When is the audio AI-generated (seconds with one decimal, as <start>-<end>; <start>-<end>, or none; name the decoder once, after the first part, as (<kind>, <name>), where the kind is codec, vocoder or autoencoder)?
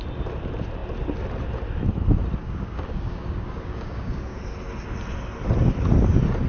2.4-4.4 (codec, DAC)